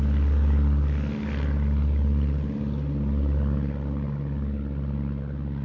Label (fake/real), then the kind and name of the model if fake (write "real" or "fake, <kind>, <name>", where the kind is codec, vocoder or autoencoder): real